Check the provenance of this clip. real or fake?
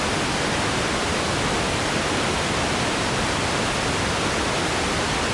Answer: real